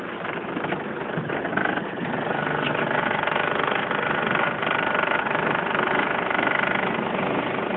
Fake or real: real